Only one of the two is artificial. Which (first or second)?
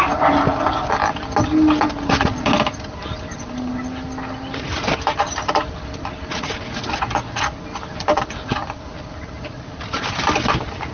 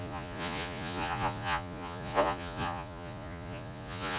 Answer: second